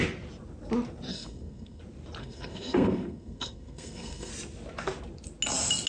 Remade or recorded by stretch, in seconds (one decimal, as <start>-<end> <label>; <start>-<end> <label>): 0.0-1.1 recorded; 1.1-1.8 remade; 1.8-2.2 recorded; 2.2-4.3 remade; 4.3-5.9 recorded